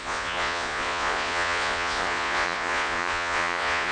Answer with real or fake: fake